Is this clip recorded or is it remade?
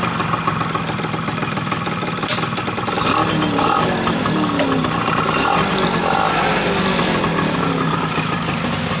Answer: recorded